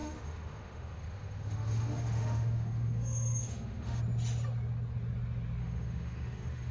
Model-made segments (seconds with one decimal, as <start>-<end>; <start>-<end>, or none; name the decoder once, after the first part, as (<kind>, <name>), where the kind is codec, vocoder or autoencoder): 0.0-4.0 (autoencoder, DAC-VAE); 5.6-6.7